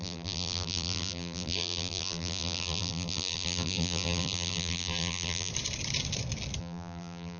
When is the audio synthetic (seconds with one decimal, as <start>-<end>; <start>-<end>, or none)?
0.0-5.5; 6.6-7.4